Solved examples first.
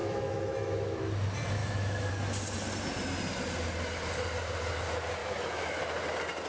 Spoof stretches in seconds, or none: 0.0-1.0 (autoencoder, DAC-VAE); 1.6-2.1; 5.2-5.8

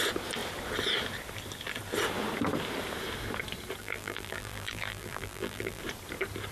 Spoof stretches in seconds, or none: 3.8-5.8 (vocoder, BigVGAN v2)

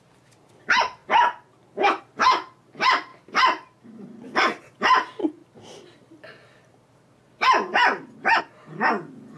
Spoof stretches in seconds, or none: 3.1-4.6 (vocoder, BigVGAN v2)